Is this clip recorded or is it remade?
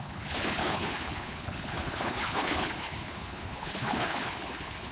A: remade